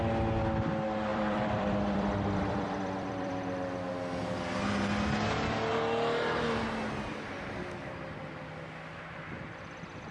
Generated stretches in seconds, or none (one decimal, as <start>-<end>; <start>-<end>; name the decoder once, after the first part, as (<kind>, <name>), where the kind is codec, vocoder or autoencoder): 1.1-3.9 (vocoder, BigVGAN v2)